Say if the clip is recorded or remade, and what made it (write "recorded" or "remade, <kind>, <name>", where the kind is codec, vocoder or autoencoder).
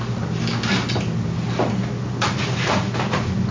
recorded